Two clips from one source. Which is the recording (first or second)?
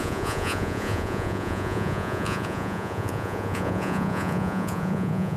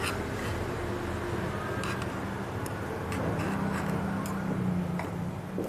second